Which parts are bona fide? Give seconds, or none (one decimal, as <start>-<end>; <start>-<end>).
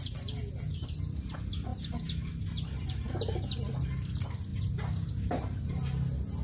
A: 0.0-6.4